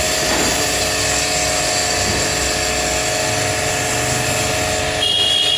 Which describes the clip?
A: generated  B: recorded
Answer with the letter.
B